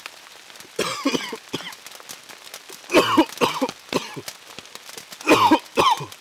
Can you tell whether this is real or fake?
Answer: real